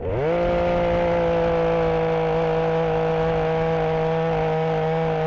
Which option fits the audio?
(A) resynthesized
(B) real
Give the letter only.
B